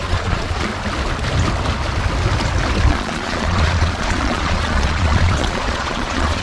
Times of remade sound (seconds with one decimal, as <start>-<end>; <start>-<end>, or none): 0.0-0.7; 2.9-6.4